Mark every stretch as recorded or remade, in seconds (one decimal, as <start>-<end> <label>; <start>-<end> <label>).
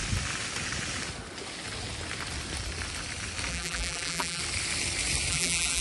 0.0-3.5 recorded; 3.5-4.4 remade; 4.4-5.3 recorded; 5.3-5.8 remade